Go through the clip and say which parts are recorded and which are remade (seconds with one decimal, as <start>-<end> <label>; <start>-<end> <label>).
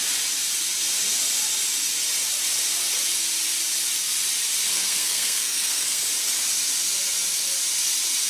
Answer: 0.0-4.7 recorded; 4.7-6.0 remade; 6.0-8.3 recorded